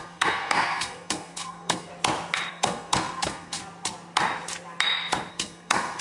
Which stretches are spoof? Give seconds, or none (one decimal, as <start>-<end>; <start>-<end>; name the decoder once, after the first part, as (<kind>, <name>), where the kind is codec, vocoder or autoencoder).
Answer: 0.0-1.9 (codec, SNAC); 2.5-3.6; 5.3-6.0